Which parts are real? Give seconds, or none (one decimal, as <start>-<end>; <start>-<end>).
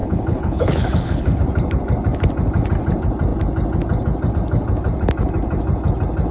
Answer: 1.4-6.3